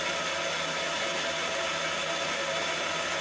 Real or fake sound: real